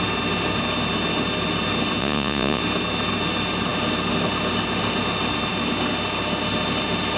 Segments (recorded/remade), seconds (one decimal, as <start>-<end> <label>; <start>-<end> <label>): 0.0-2.0 recorded; 2.0-2.6 remade; 2.6-7.2 recorded